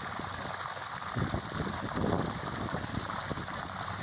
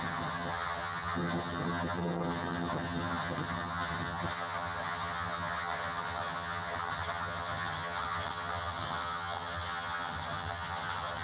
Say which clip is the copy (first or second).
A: second